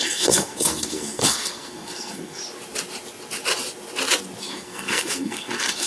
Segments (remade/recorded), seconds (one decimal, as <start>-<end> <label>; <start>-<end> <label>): 0.0-2.4 remade; 2.4-4.4 recorded; 4.4-5.9 remade

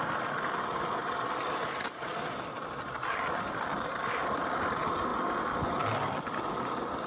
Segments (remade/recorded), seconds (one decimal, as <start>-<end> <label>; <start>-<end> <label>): 0.0-1.0 remade; 1.0-1.9 recorded; 1.9-5.1 remade; 5.1-7.1 recorded

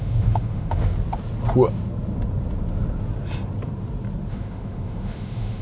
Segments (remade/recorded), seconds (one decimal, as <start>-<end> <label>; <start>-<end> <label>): 0.0-0.9 remade; 0.9-4.3 recorded; 4.3-5.6 remade

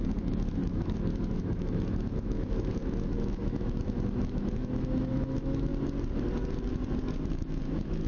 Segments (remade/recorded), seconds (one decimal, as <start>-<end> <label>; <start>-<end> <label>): 0.0-5.7 remade; 5.7-7.3 recorded; 7.3-8.1 remade

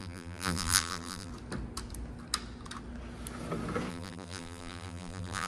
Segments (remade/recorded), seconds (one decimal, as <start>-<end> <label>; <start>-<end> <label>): 0.0-1.3 remade; 1.3-3.9 recorded; 3.9-5.5 remade